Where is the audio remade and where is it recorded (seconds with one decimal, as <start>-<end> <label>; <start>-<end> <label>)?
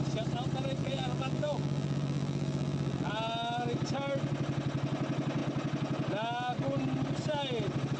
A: 0.0-0.8 recorded; 0.8-3.1 remade; 3.1-8.0 recorded